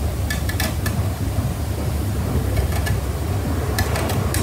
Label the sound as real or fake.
real